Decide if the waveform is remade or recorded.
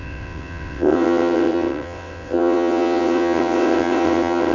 remade